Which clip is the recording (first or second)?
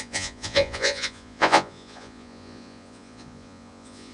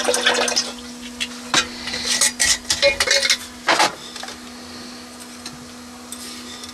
second